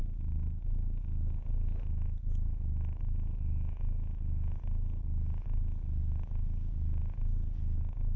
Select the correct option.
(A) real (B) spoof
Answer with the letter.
A